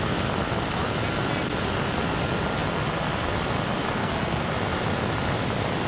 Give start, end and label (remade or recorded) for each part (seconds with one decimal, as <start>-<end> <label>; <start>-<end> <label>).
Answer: 0.0-4.0 recorded; 4.0-4.5 remade; 4.5-5.9 recorded